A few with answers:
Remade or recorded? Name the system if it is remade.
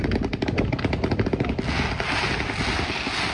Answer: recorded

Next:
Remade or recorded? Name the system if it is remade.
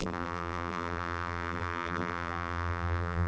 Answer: remade, vocoder, BigVGAN v2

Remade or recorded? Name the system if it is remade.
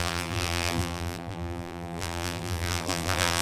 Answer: remade, vocoder, BigVGAN v2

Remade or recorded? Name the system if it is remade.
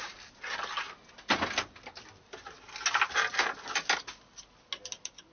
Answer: recorded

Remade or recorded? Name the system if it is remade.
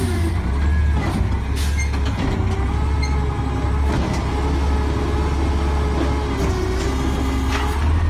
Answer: recorded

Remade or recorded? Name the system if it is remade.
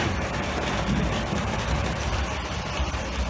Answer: remade, vocoder, BigVGAN v2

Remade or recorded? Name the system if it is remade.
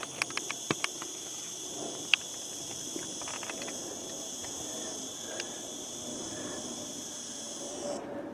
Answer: remade, vocoder, BigVGAN v2